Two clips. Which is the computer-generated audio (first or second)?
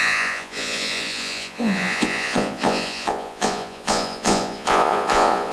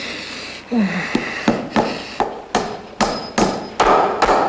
first